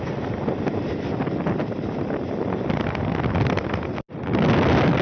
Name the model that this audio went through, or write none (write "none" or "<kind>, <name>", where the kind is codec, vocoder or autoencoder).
none